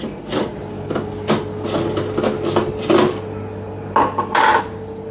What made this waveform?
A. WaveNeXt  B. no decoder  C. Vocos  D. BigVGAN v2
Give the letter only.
B